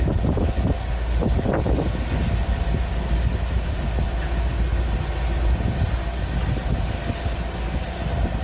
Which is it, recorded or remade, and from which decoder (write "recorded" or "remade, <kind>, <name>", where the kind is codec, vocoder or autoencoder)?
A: recorded